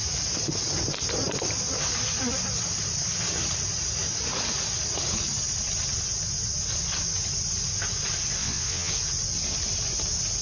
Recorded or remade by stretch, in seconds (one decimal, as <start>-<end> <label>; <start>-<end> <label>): 0.0-8.4 recorded; 8.4-8.9 remade; 8.9-10.4 recorded